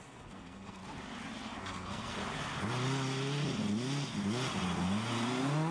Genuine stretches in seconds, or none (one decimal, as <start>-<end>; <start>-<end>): 0.8-1.6; 2.2-5.7